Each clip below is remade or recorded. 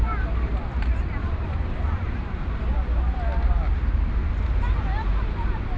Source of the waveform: recorded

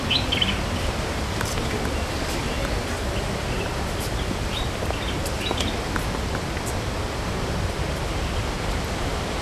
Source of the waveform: recorded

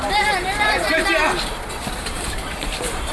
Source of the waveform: remade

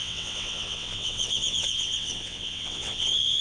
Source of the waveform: remade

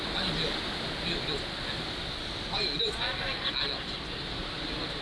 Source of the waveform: recorded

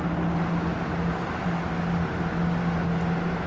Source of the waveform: recorded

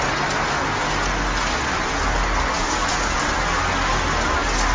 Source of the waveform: recorded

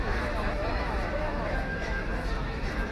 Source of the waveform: remade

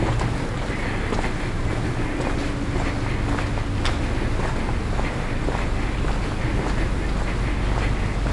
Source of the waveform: recorded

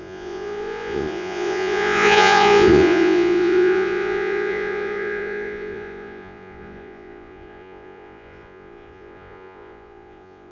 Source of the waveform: remade